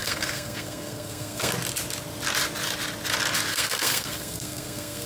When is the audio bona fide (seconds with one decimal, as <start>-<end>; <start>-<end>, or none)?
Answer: 1.5-3.5